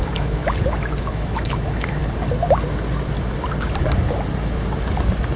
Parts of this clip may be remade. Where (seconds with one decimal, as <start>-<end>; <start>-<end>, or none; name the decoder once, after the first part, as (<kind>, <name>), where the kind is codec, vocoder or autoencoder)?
0.0-0.4 (autoencoder, DAC-VAE); 1.0-2.0